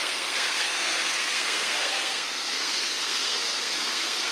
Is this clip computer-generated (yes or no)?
yes